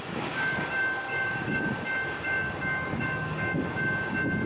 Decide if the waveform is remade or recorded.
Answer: remade